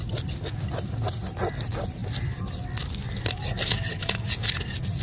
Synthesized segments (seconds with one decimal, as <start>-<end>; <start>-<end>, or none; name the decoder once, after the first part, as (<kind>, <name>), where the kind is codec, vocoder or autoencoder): none